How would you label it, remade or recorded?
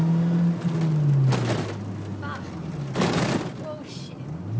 recorded